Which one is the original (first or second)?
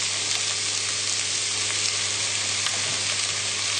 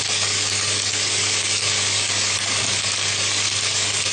first